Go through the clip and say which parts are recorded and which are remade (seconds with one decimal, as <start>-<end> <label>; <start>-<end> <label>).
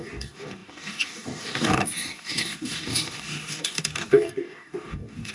0.0-5.3 remade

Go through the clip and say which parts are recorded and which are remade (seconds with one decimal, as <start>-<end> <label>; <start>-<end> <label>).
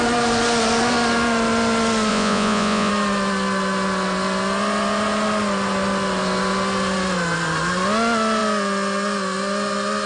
0.0-2.1 recorded; 2.1-2.9 remade; 2.9-10.1 recorded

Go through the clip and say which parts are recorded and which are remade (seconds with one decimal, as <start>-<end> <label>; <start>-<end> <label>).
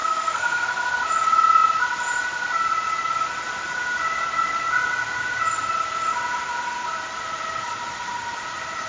0.0-0.9 remade; 0.9-8.9 recorded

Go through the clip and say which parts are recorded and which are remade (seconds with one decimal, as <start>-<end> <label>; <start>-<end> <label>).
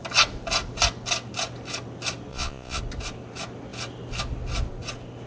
0.0-2.3 recorded; 2.3-2.8 remade; 2.8-5.3 recorded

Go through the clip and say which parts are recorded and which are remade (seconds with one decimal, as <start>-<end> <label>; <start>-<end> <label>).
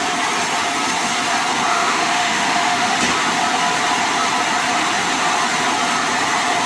0.0-1.7 recorded; 1.7-2.9 remade; 2.9-6.7 recorded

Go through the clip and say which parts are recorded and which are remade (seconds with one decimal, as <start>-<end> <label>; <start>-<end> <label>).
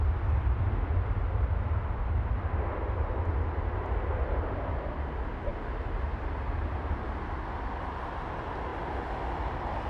0.0-9.9 recorded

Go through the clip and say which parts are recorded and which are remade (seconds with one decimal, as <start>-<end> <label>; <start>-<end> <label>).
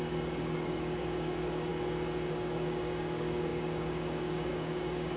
0.0-1.7 remade; 1.7-2.3 recorded; 2.3-5.2 remade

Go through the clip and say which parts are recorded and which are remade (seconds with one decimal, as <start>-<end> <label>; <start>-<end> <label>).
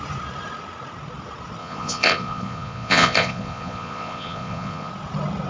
0.0-1.6 recorded; 1.6-4.9 remade; 4.9-5.5 recorded